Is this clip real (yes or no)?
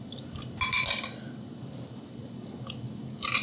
yes